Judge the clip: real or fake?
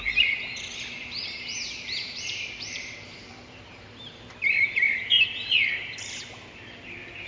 fake